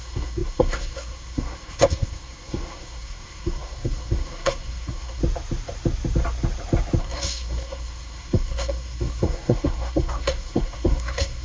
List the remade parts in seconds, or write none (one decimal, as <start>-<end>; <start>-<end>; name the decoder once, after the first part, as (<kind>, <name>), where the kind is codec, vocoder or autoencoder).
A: 0.0-5.2 (codec, SNAC); 7.0-11.4